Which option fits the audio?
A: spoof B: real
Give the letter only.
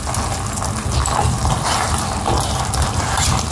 B